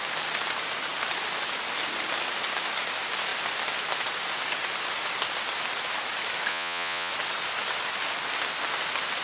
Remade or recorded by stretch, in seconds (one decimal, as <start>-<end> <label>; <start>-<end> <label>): 0.0-6.5 recorded; 6.5-7.1 remade; 7.1-9.2 recorded